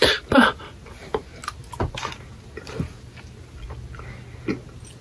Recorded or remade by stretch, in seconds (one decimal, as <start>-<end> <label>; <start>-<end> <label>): 0.0-0.5 remade; 0.5-5.0 recorded